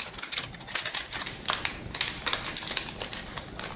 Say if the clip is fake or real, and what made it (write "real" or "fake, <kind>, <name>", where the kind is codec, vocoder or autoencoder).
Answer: fake, vocoder, BigVGAN v2